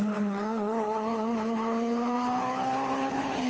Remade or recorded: remade